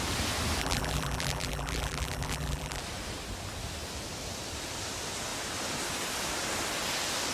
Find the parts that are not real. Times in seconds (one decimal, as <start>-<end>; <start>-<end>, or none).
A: 0.6-2.8